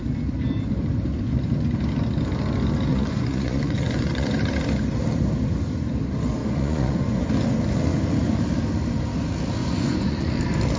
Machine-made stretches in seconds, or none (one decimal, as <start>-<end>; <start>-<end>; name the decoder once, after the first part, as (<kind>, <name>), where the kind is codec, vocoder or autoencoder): 2.9-4.4 (vocoder, Vocos); 6.4-7.3; 9.6-10.3